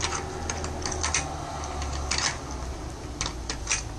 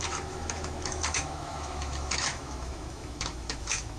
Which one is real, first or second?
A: first